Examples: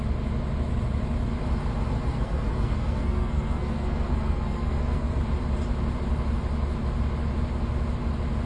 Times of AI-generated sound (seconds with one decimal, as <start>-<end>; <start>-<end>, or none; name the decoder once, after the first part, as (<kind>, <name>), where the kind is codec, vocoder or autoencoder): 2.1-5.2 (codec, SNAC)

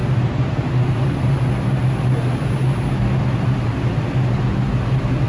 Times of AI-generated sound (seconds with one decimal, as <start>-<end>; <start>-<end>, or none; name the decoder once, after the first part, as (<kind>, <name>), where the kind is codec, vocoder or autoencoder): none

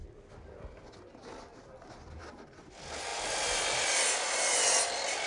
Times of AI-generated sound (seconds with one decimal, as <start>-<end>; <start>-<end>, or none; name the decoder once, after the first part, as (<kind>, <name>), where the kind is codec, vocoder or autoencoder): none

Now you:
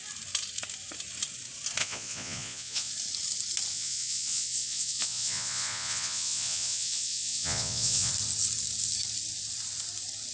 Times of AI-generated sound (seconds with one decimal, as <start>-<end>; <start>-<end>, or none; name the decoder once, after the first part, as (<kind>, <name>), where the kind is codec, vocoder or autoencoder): 1.8-2.9 (vocoder, Vocos); 3.7-8.1

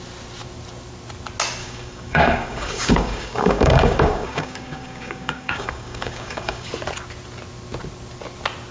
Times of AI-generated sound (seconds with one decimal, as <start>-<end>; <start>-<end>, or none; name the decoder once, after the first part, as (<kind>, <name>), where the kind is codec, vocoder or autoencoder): 1.6-6.7 (codec, DAC)